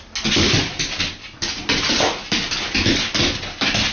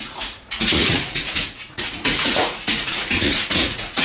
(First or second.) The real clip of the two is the first